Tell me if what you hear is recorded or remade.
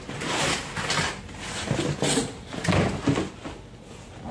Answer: recorded